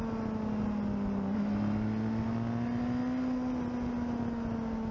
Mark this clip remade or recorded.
recorded